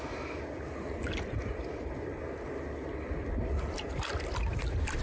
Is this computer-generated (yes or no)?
no